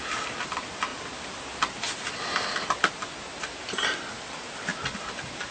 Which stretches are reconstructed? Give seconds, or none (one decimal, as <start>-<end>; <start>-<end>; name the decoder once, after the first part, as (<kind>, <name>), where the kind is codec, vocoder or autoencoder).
none